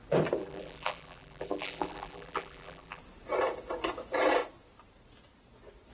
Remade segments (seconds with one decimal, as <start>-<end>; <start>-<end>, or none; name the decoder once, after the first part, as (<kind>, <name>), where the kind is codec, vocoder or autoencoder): 0.4-3.0 (vocoder, BigVGAN v2)